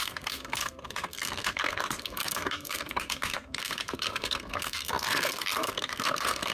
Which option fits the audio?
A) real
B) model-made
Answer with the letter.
B